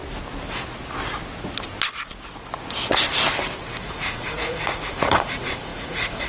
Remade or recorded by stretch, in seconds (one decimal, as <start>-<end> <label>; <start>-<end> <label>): 0.0-3.8 recorded; 3.8-6.3 remade